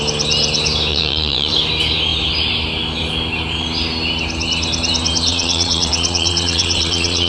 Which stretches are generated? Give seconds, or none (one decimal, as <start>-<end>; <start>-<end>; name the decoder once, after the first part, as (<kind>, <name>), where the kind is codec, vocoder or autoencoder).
0.9-1.5 (vocoder, WaveNeXt); 5.3-7.3